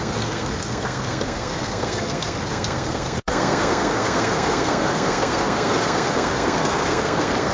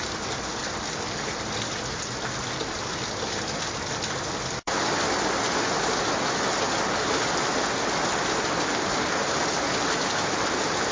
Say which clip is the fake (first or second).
first